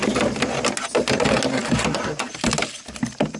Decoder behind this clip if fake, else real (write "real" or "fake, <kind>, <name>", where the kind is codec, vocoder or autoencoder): real